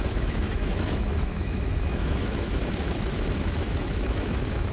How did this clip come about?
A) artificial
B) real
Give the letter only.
A